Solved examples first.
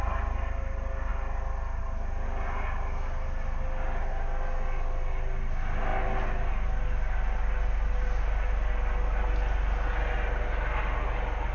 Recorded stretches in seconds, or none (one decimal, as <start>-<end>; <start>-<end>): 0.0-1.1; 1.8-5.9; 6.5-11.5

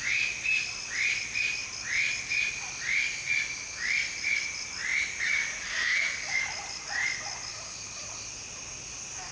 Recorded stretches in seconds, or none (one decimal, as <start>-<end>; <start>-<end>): 0.0-9.3

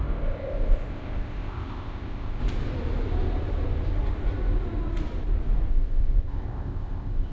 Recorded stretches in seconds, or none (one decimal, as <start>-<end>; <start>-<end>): 2.4-5.7

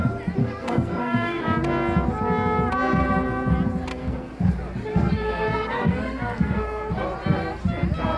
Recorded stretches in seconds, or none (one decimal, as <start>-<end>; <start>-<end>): 0.0-0.4; 1.4-3.9; 4.5-4.9; 6.9-8.2

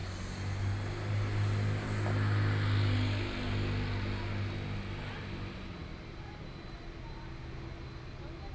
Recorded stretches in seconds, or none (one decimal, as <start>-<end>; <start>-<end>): 0.0-8.5